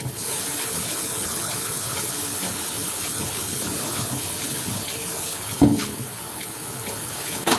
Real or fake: fake